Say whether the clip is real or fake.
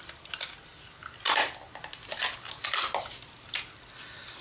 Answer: real